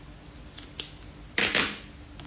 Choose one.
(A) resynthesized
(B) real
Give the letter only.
B